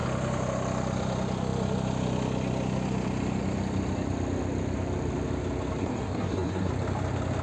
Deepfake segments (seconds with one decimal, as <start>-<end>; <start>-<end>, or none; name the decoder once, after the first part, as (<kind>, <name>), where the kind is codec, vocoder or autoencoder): 5.8-6.7 (codec, SNAC)

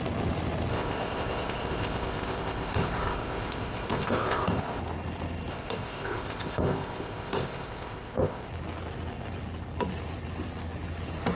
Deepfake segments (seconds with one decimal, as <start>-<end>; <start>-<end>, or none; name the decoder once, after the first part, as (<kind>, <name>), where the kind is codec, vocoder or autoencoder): 0.7-4.8 (codec, ZipCodec); 5.5-8.5

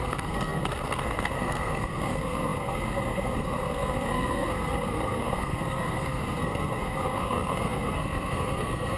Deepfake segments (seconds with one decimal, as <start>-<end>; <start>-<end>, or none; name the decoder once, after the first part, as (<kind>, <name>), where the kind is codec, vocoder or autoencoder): 0.0-9.0 (codec, SNAC)

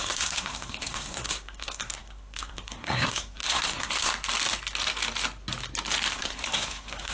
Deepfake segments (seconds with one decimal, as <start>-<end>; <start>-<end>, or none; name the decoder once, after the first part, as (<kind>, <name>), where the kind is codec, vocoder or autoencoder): 0.0-4.1 (codec, SNAC); 6.1-7.1

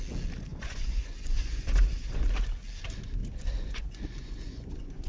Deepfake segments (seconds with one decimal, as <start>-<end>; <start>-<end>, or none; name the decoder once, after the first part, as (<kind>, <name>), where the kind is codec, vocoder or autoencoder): 0.5-2.3 (vocoder, Vocos); 3.2-5.1

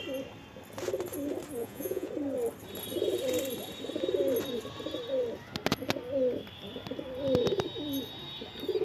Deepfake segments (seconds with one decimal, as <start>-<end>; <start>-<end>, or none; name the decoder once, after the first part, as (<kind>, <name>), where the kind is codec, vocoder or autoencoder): 1.6-2.1 (vocoder, Vocos)

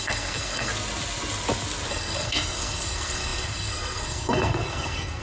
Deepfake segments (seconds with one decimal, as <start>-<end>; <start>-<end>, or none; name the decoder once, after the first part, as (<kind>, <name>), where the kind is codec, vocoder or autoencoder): 0.0-0.7 (codec, SNAC); 1.9-5.2

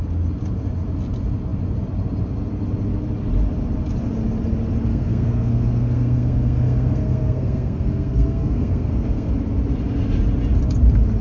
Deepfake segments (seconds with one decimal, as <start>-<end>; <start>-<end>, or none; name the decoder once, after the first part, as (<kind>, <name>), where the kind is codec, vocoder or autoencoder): 4.9-9.3 (codec, SNAC)